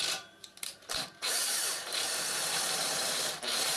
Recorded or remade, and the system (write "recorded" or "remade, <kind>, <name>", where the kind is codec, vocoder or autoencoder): remade, vocoder, BigVGAN v2